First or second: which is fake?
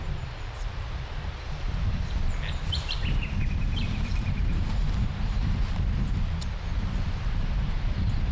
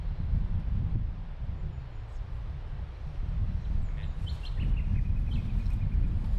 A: first